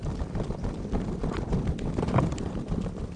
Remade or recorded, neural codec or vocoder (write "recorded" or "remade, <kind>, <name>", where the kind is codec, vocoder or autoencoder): recorded